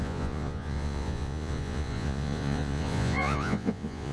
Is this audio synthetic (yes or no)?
yes